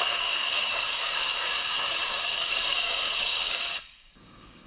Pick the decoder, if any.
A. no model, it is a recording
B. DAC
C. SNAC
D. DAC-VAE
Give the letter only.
B